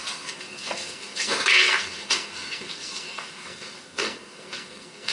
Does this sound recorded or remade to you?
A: remade